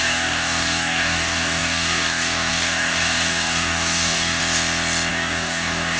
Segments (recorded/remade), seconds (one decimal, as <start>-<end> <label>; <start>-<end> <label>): 0.0-4.4 remade; 4.4-5.1 recorded; 5.1-6.0 remade